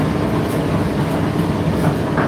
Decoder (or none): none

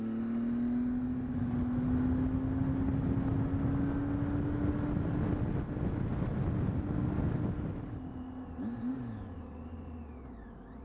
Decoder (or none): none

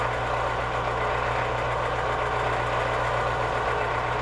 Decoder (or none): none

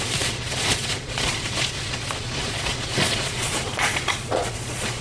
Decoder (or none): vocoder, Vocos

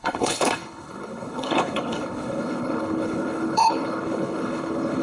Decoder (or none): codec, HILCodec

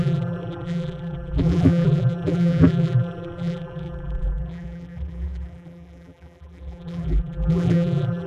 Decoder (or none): vocoder, BigVGAN v2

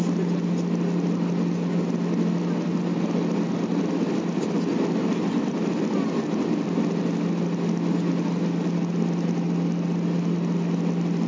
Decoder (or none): none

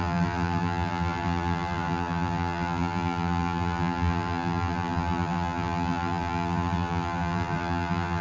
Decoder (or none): vocoder, BigVGAN v2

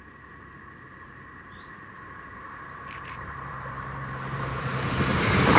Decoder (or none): vocoder, BigVGAN v2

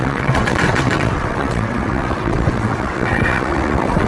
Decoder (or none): vocoder, WaveNeXt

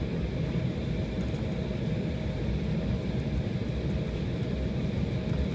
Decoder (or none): none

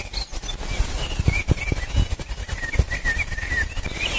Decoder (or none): none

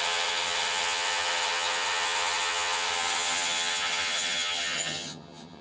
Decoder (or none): vocoder, HiFi-GAN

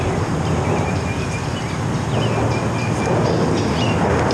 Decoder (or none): none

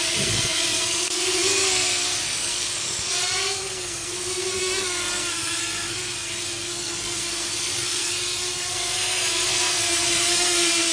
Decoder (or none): codec, SNAC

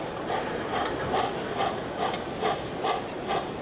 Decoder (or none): none